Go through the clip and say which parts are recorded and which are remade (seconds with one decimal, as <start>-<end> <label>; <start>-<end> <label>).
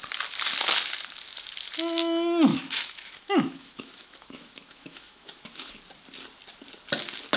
0.0-2.5 recorded; 2.5-5.7 remade; 5.7-7.4 recorded